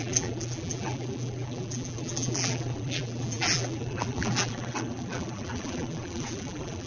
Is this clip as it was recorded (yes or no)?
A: no